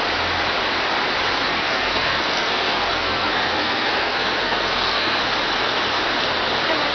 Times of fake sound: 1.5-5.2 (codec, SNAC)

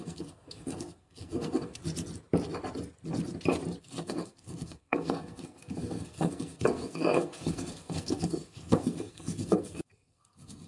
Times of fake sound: 0.0-1.8 (codec, SNAC); 3.8-10.7

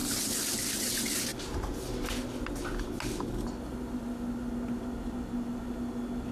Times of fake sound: none

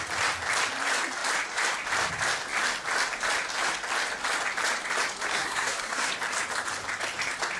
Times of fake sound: 5.3-6.1 (codec, SNAC)

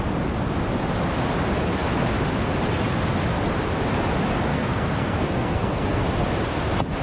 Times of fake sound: 4.5-6.0 (codec, SNAC)